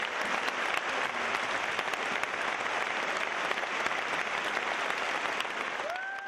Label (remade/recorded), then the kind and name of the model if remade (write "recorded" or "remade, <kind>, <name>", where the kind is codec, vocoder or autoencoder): recorded